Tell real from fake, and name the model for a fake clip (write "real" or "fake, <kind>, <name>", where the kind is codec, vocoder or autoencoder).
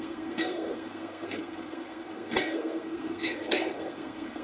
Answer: fake, codec, SNAC